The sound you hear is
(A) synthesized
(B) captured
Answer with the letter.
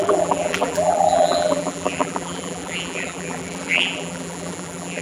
A